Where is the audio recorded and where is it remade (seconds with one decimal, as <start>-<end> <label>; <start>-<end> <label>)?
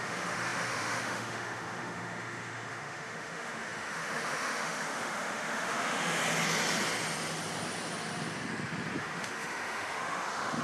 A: 0.0-6.2 remade; 6.2-9.0 recorded; 9.0-10.6 remade